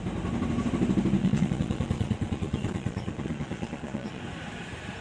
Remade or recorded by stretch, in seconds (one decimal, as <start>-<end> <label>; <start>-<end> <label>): 0.0-1.2 recorded; 1.2-4.2 remade; 4.2-5.0 recorded